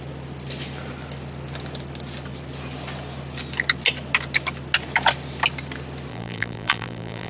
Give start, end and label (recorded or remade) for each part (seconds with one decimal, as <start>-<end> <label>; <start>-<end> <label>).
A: 0.0-6.1 recorded; 6.1-7.3 remade